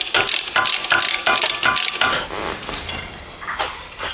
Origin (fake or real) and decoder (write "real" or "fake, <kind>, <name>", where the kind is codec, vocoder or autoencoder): real